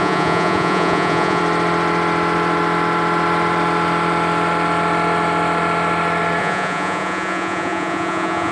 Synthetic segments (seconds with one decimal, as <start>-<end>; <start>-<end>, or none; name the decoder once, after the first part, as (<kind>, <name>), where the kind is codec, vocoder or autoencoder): 0.0-1.4 (vocoder, Vocos); 6.4-8.5